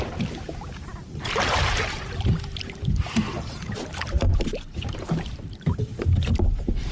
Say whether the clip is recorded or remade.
remade